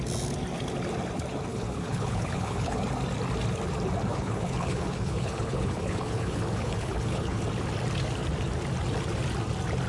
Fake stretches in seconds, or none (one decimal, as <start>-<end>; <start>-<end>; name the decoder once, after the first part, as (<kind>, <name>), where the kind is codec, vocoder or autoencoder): 1.5-2.8 (codec, HILCodec); 4.1-7.4